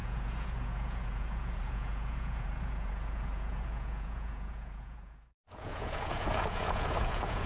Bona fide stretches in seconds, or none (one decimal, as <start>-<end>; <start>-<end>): none